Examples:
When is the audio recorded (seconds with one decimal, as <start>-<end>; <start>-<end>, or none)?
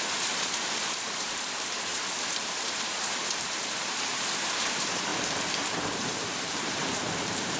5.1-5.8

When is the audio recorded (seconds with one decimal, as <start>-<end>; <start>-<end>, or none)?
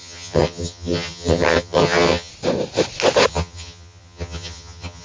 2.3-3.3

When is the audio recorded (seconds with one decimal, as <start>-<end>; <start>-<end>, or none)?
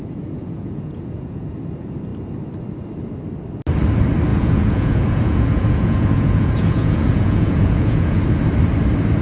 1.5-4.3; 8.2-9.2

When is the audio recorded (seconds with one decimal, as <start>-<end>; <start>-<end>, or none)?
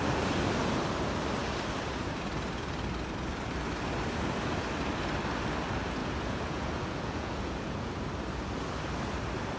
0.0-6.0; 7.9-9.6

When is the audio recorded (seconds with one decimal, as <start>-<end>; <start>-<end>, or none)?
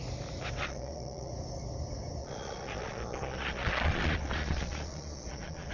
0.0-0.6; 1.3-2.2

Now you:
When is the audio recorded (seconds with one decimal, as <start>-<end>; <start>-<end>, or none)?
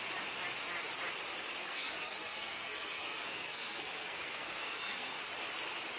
0.0-1.6; 5.2-6.0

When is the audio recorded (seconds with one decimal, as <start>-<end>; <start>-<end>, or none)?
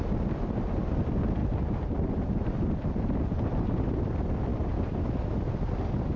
0.0-1.4; 2.8-4.5; 5.0-6.2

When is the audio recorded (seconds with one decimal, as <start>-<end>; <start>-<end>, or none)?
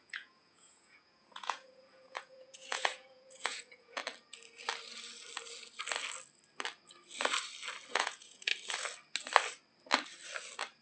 4.0-7.9; 8.5-10.8